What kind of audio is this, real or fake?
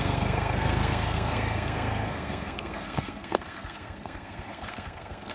fake